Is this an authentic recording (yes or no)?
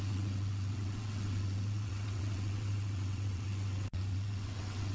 no